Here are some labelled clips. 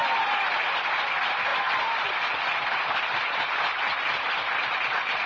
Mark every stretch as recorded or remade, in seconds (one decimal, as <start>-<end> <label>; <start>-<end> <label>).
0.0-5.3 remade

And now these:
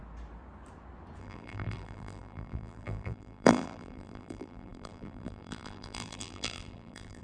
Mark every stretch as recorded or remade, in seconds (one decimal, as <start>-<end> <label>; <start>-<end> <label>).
0.0-1.2 recorded; 1.2-7.2 remade

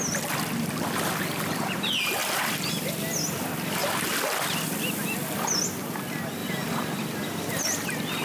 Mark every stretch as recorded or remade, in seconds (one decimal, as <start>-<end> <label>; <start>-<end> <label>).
0.0-2.2 recorded; 2.2-2.9 remade; 2.9-3.8 recorded; 3.8-5.0 remade; 5.0-6.4 recorded; 6.4-7.6 remade; 7.6-8.2 recorded

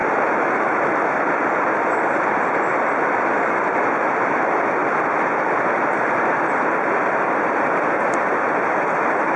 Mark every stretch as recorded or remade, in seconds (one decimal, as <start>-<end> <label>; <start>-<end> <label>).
0.0-1.5 remade; 1.5-4.8 recorded; 4.8-6.7 remade; 6.7-9.4 recorded